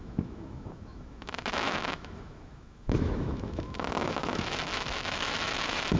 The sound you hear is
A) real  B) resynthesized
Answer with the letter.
B